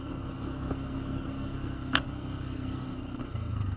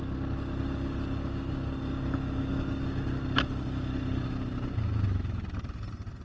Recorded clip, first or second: second